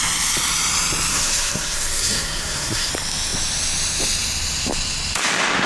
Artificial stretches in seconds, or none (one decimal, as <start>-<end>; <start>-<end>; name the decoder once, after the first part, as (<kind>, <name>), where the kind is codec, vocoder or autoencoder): 1.1-2.9 (codec, SNAC)